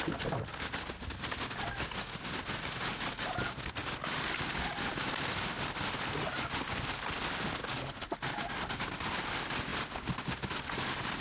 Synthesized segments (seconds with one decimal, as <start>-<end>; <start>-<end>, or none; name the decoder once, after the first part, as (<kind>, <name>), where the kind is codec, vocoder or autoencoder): 9.7-10.5 (vocoder, BigVGAN v2)